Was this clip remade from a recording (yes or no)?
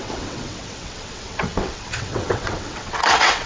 yes